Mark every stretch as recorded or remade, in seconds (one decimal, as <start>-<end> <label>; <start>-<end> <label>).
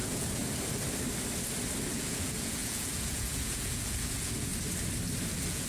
0.0-0.4 remade; 0.4-1.9 recorded; 1.9-4.5 remade; 4.5-5.3 recorded; 5.3-5.7 remade